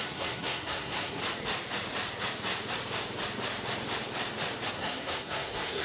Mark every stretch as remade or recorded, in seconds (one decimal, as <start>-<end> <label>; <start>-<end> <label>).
0.0-1.2 remade; 1.2-4.7 recorded; 4.7-5.8 remade